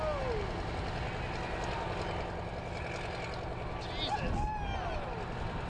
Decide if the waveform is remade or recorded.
recorded